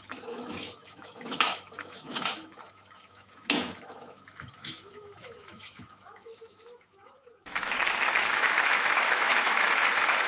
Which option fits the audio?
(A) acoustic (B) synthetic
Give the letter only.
B